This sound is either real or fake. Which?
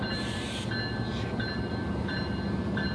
real